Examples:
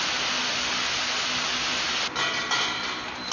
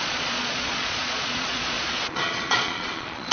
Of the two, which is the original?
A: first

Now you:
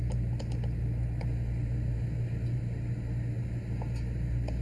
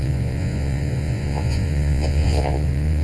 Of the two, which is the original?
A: first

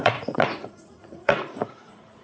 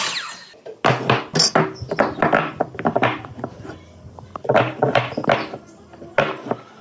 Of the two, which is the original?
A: second